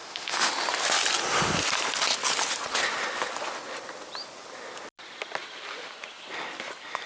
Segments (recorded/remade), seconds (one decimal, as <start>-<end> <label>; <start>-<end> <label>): 0.0-0.5 remade; 0.5-7.1 recorded